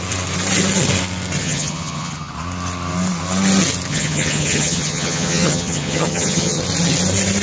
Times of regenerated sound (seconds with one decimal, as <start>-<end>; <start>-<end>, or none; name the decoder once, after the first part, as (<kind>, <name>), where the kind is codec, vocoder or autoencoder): 1.4-2.3 (vocoder, HiFi-GAN); 3.9-6.6